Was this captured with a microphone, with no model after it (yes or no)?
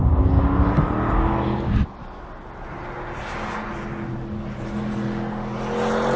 yes